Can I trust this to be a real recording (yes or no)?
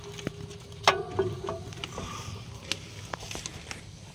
yes